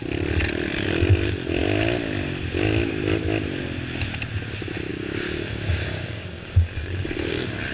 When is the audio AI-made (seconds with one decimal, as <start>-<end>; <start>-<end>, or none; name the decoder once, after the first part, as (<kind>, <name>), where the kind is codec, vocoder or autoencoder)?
4.9-7.0 (codec, DAC)